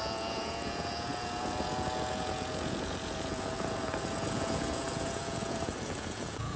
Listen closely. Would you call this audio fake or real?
fake